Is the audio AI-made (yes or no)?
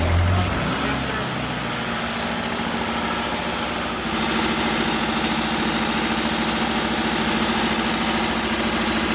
no